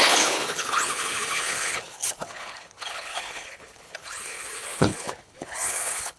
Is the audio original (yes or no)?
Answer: no